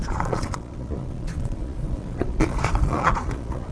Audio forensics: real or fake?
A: fake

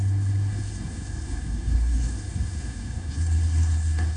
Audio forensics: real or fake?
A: fake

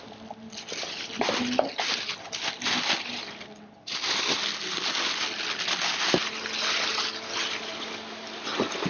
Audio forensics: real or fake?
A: real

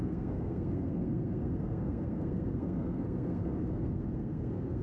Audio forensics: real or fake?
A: fake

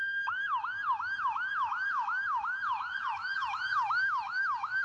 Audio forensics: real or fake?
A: fake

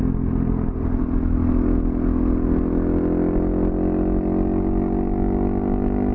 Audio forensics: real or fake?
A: real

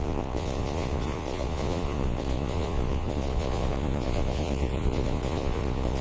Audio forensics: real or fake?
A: fake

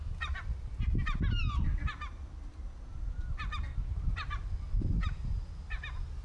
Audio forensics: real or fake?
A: real